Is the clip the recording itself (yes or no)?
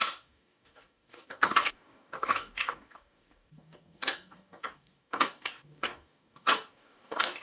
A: no